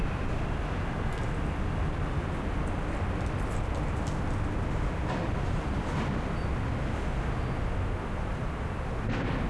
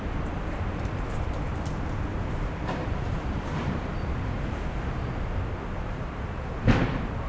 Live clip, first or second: first